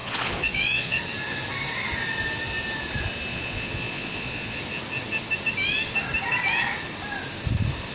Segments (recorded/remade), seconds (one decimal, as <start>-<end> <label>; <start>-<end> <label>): 0.0-1.0 remade; 1.0-3.3 recorded; 3.3-4.6 remade; 4.6-7.9 recorded